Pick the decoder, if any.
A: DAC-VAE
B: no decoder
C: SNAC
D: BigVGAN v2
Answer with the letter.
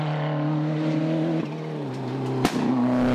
B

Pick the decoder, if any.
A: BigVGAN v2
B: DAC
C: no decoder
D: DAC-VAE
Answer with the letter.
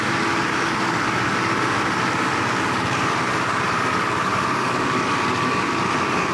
B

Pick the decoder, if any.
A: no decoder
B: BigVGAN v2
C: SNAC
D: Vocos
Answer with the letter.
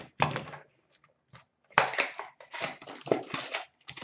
A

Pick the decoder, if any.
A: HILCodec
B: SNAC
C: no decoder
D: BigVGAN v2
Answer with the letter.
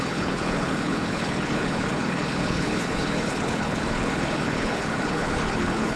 A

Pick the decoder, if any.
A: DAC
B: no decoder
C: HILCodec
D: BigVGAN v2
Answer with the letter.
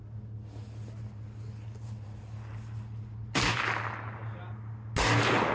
B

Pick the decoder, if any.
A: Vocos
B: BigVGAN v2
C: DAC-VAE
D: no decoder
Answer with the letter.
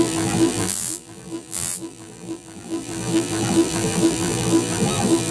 B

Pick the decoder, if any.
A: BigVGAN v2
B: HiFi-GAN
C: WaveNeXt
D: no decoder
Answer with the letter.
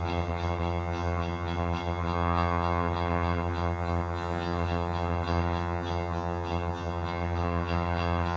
B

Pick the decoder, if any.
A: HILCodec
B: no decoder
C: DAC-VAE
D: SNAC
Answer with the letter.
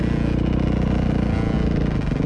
B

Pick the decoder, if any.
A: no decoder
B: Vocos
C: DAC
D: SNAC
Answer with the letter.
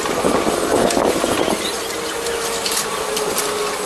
A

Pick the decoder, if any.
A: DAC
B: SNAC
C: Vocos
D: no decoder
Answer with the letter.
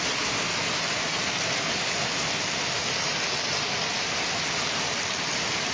D